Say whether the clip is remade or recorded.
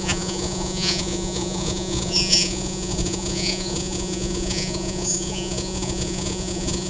remade